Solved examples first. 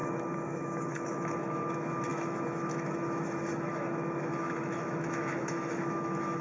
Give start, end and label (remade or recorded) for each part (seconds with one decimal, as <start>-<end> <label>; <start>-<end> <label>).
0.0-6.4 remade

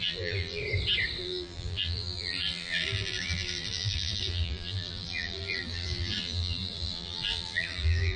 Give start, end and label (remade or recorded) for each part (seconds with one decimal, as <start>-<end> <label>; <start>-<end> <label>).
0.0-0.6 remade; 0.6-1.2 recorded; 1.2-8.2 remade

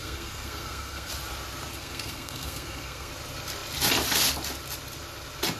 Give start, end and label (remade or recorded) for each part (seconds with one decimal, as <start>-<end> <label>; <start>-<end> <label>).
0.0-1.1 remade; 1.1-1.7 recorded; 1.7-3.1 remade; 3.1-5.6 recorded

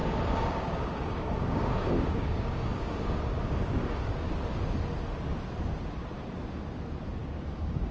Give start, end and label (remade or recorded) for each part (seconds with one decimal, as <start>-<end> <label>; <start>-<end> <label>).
0.0-4.3 remade; 4.3-7.2 recorded; 7.2-7.9 remade